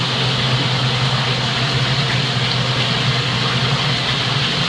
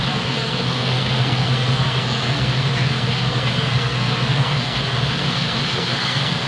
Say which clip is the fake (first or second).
second